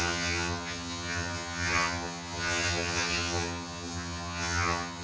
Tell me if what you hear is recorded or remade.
remade